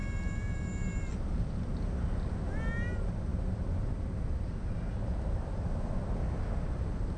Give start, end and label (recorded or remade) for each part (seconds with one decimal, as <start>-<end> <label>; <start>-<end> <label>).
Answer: 0.0-7.2 recorded